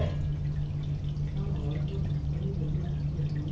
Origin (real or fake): real